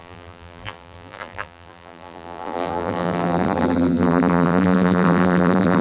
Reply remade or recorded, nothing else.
remade